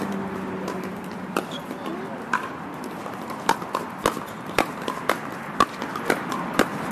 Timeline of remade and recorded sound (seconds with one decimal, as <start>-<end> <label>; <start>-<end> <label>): 0.0-6.9 recorded